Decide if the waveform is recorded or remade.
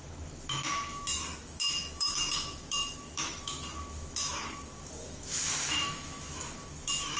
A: remade